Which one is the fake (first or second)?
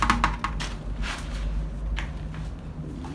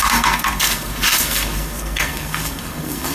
second